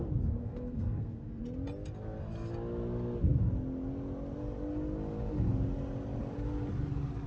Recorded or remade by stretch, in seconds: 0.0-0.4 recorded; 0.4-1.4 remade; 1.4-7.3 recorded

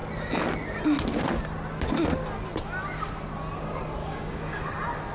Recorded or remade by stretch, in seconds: 0.0-4.0 recorded; 4.0-4.6 remade; 4.6-5.1 recorded